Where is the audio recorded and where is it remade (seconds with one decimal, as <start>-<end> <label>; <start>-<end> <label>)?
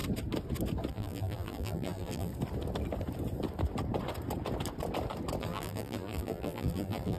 0.0-0.9 recorded; 0.9-2.3 remade; 2.3-5.4 recorded; 5.4-7.2 remade